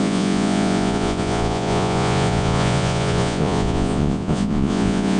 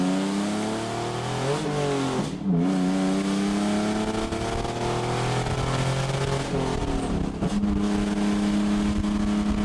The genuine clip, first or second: second